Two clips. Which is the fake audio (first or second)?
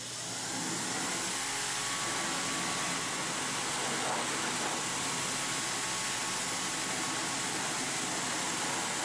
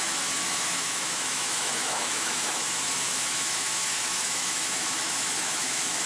second